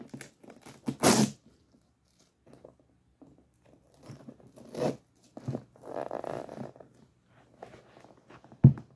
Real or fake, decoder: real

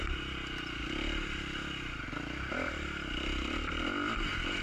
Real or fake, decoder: real